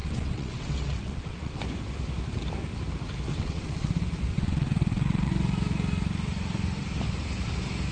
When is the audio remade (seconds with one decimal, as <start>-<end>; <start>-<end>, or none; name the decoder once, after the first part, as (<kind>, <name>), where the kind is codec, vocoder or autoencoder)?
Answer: 0.0-1.6 (vocoder, WaveNeXt); 3.3-3.9; 4.3-5.3